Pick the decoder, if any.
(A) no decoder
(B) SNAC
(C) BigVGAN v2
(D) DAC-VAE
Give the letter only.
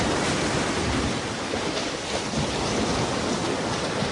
A